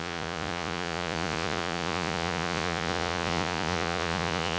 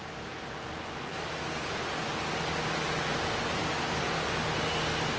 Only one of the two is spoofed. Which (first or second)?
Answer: first